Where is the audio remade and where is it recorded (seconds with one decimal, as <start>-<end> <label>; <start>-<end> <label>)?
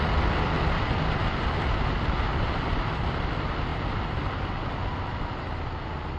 0.0-6.2 recorded